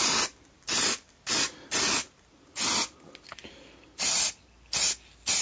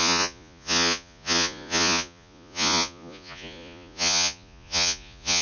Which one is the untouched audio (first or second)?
first